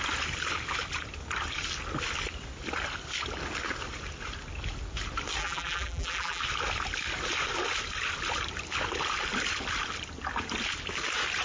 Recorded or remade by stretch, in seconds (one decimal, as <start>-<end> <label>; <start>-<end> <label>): 0.0-5.4 recorded; 5.4-6.4 remade; 6.4-11.4 recorded